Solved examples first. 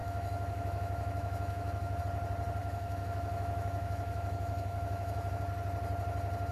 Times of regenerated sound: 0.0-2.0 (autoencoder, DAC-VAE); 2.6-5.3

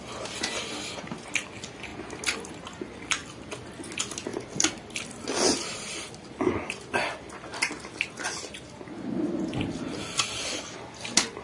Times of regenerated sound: none

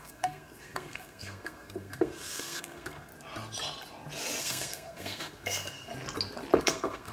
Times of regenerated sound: 0.0-3.1 (codec, SNAC); 4.4-5.9; 6.6-7.1

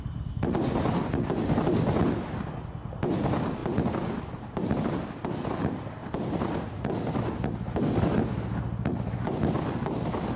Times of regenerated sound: 6.0-6.9 (vocoder, BigVGAN v2)

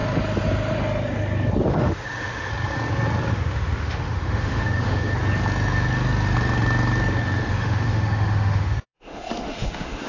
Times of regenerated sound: 1.7-2.5 (autoencoder, DAC-VAE); 3.3-5.1; 7.5-10.1

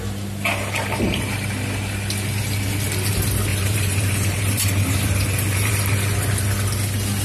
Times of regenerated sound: 3.5-5.7 (vocoder, BigVGAN v2)

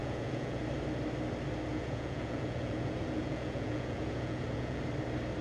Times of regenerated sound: 0.0-0.6 (vocoder, Vocos); 1.7-4.8